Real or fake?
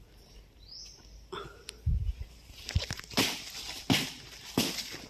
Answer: real